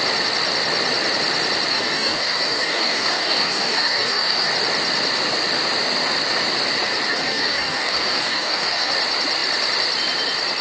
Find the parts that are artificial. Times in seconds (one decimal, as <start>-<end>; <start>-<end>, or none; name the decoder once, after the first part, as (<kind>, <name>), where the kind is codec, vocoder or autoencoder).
1.7-4.5 (codec, DAC); 7.1-8.9